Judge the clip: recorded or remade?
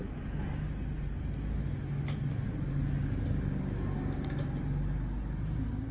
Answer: recorded